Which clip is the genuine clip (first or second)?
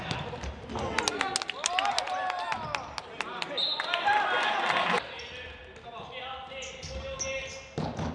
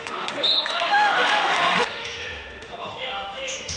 first